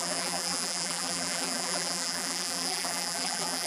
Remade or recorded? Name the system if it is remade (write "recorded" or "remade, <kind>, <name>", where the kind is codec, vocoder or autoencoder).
remade, vocoder, BigVGAN v2